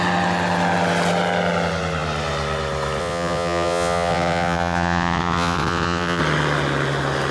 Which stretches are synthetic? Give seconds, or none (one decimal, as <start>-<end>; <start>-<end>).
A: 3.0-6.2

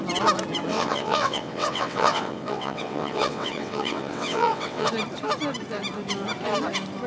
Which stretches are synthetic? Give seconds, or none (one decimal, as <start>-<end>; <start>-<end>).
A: 0.7-4.9

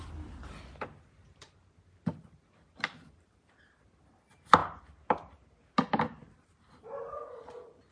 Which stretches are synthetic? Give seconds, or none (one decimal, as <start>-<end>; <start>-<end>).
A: none

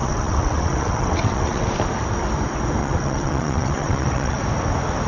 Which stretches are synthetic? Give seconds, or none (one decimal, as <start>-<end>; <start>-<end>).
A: 0.0-1.7; 2.8-4.4

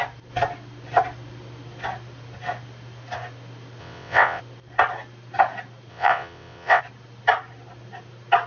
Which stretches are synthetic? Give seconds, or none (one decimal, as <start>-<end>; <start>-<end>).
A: 3.8-4.4; 5.9-6.8

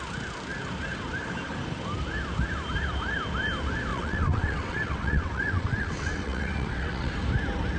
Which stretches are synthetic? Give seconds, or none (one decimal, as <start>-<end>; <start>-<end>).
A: 3.9-7.1

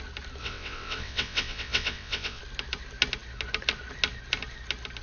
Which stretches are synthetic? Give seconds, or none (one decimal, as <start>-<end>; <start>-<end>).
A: 0.4-2.4

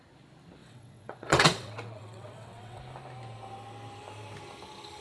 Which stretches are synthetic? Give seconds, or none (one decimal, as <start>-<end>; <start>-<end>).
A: 0.6-2.8